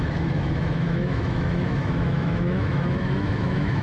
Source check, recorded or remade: remade